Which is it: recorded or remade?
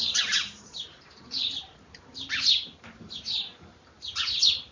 remade